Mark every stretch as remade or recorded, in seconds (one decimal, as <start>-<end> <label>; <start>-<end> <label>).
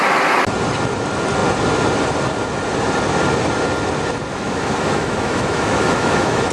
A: 0.0-4.3 recorded; 4.3-6.5 remade